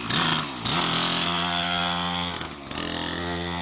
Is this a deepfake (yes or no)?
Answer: no